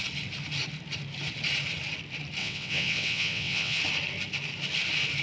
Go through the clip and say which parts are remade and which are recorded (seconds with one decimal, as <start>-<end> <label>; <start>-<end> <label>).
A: 0.0-2.4 recorded; 2.4-3.8 remade; 3.8-5.2 recorded